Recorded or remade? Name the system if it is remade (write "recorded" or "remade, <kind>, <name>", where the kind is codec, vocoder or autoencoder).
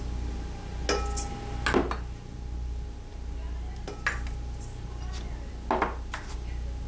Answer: recorded